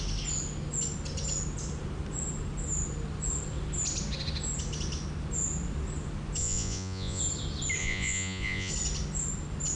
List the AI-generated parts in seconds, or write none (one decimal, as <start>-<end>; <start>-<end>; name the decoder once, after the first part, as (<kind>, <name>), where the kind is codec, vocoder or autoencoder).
6.4-7.2 (vocoder, Vocos); 7.8-8.7